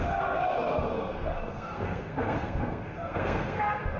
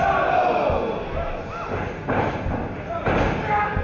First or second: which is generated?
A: first